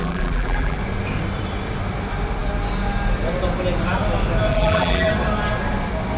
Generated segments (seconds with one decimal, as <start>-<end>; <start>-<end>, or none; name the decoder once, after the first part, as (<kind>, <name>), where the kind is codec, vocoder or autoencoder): 0.0-0.8 (vocoder, BigVGAN v2); 4.5-5.1